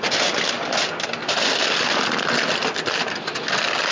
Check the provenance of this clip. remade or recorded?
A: recorded